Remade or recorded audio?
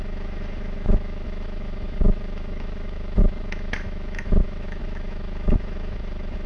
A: remade